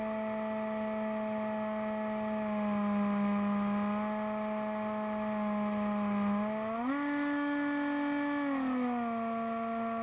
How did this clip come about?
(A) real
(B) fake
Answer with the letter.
A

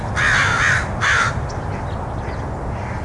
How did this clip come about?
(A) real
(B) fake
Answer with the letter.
A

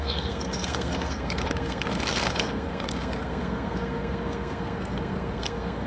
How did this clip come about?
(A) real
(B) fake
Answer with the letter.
B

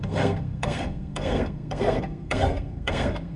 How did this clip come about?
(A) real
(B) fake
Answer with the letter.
B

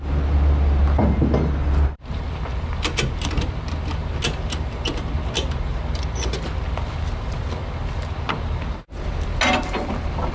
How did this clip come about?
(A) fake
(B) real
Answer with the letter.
B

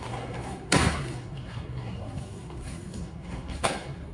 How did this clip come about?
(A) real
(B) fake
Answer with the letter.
B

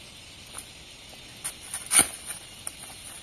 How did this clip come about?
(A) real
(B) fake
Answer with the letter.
A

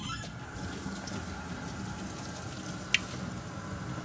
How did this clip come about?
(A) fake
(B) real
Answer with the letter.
B